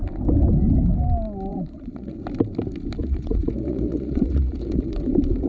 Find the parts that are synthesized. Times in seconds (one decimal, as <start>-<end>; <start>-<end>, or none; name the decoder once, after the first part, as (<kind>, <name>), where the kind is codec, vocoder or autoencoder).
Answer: 1.5-2.2 (vocoder, Vocos); 3.0-5.1